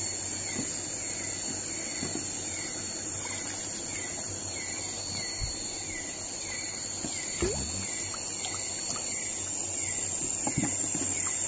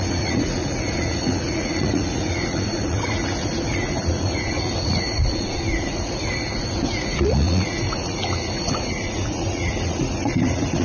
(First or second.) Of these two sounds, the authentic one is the first